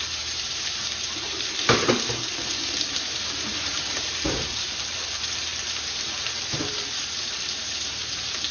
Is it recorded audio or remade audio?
remade